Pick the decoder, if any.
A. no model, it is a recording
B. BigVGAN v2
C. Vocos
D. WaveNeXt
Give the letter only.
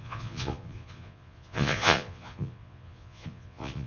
C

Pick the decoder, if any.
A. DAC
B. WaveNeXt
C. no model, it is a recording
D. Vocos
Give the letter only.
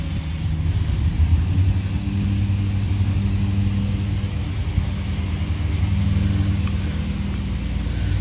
C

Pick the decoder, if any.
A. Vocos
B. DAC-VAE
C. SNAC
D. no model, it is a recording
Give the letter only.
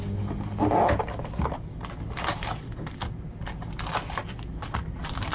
D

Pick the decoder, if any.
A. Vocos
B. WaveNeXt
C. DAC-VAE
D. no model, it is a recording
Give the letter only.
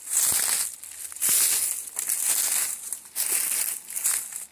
D